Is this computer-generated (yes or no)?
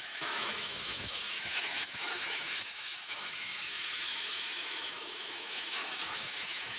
yes